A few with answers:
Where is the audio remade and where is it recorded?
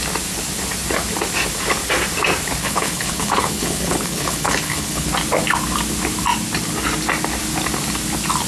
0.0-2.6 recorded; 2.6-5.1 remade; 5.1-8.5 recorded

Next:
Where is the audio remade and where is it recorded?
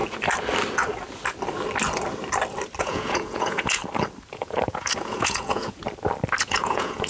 0.0-2.8 recorded; 2.8-3.8 remade; 3.8-4.3 recorded; 4.3-5.8 remade; 5.8-6.4 recorded; 6.4-7.1 remade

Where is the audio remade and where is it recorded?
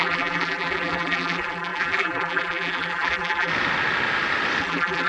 0.0-3.5 remade; 3.5-4.6 recorded; 4.6-5.1 remade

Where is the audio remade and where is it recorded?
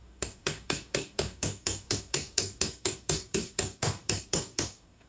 0.0-5.1 remade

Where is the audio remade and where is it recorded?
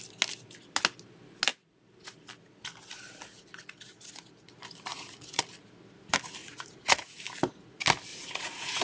0.0-4.9 recorded; 4.9-5.4 remade; 5.4-6.4 recorded; 6.4-7.2 remade; 7.2-8.1 recorded; 8.1-8.8 remade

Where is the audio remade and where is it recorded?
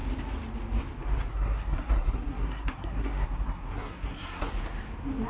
0.0-1.3 recorded; 1.3-4.5 remade; 4.5-5.3 recorded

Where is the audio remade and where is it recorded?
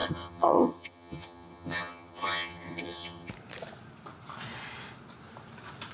0.0-3.3 remade; 3.3-5.9 recorded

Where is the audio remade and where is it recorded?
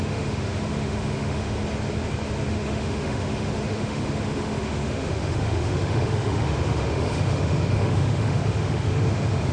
0.0-1.6 remade; 1.6-2.5 recorded; 2.5-9.5 remade